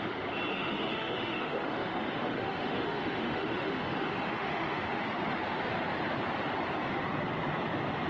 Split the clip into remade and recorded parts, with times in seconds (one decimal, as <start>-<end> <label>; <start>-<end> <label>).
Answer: 0.0-0.5 recorded; 0.5-5.0 remade; 5.0-8.1 recorded